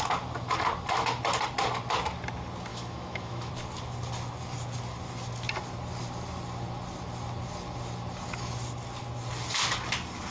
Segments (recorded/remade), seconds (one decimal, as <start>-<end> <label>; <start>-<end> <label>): 0.0-2.7 recorded; 2.7-3.5 remade; 3.5-10.3 recorded